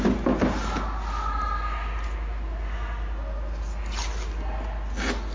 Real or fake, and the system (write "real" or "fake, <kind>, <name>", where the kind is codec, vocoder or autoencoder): real